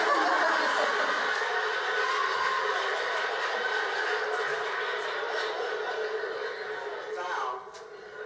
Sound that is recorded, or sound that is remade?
recorded